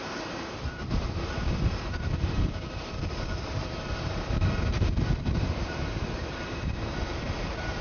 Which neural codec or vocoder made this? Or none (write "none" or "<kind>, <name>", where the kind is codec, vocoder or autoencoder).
vocoder, BigVGAN v2